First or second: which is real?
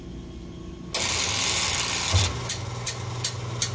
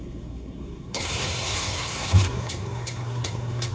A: first